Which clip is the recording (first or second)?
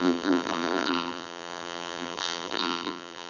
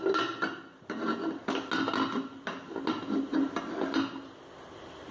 second